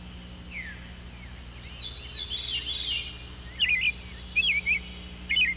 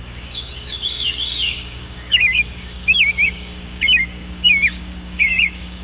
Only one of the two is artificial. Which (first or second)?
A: second